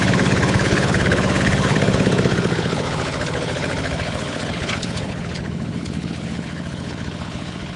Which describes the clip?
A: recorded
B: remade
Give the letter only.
B